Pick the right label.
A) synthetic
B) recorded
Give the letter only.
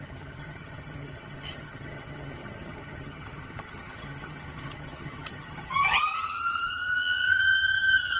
A